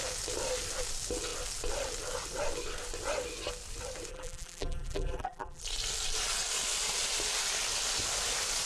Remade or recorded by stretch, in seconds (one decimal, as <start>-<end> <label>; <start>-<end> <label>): 0.0-4.1 recorded; 4.1-5.6 remade; 5.6-8.7 recorded